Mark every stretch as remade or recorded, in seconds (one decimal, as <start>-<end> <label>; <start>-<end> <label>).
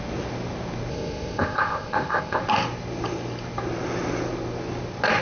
0.0-0.9 recorded; 0.9-2.4 remade; 2.4-5.2 recorded